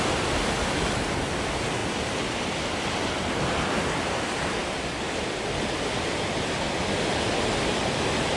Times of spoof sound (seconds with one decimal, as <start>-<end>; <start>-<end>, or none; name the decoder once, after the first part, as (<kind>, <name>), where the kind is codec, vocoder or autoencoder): none